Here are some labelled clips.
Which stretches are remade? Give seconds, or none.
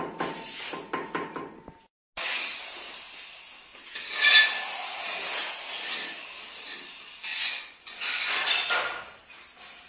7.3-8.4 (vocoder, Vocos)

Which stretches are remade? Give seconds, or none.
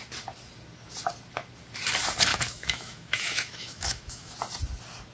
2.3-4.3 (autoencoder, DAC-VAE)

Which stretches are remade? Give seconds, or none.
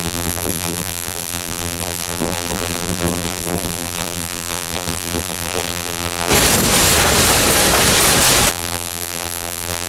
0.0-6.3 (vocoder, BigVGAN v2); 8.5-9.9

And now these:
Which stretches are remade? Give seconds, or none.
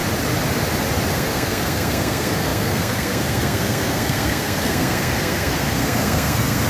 1.1-6.7 (codec, SNAC)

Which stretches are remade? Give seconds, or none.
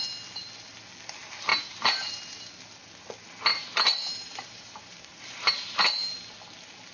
1.5-2.5 (vocoder, BigVGAN v2); 3.5-5.8